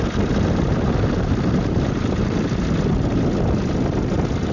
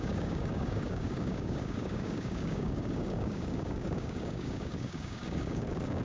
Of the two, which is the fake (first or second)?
second